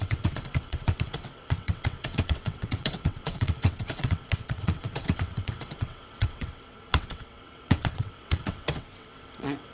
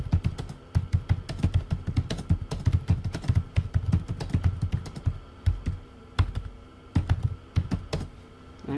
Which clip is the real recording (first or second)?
second